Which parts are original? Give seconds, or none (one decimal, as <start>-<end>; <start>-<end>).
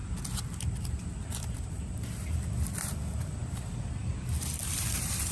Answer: 0.0-5.3